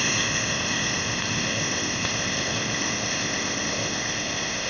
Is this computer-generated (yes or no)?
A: yes